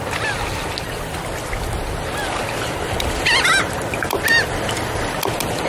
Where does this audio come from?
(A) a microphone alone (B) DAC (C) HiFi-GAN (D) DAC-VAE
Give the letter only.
A